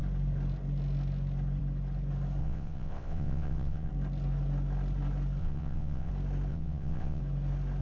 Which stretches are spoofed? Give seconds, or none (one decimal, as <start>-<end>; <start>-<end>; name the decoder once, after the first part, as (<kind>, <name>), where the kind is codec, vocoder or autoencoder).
2.4-3.9 (vocoder, WaveNeXt); 5.4-6.1; 6.5-7.2